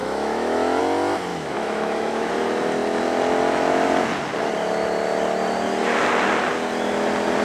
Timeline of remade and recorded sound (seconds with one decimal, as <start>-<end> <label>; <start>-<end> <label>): 0.0-0.8 remade; 0.8-1.3 recorded; 1.3-2.3 remade; 2.3-7.4 recorded